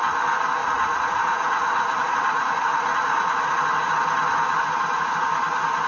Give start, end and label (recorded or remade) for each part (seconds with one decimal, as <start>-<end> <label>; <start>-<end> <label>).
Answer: 0.0-0.6 recorded; 0.6-3.6 remade; 3.6-5.9 recorded

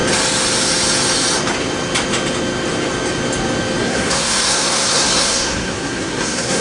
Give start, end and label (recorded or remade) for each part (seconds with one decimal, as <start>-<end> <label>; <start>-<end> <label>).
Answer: 0.0-3.8 recorded; 3.8-6.6 remade

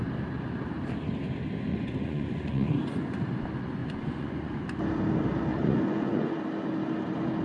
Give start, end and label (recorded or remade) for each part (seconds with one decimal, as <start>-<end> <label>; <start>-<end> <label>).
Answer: 0.0-1.7 recorded; 1.7-3.0 remade; 3.0-3.8 recorded; 3.8-4.6 remade; 4.6-5.5 recorded; 5.5-6.4 remade; 6.4-7.4 recorded

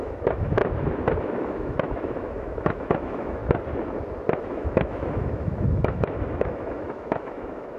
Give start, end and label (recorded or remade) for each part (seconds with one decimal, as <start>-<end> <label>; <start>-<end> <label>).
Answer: 0.0-0.6 remade; 0.6-1.2 recorded; 1.2-3.4 remade; 3.4-4.4 recorded; 4.4-7.8 remade

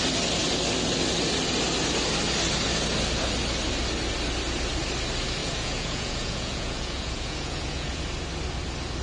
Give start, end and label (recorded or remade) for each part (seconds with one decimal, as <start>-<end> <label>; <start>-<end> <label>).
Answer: 0.0-5.4 recorded; 5.4-8.0 remade; 8.0-9.0 recorded

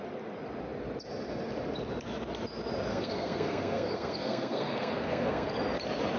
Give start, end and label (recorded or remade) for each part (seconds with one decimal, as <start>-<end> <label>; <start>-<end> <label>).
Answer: 0.0-2.9 recorded; 2.9-5.5 remade; 5.5-6.2 recorded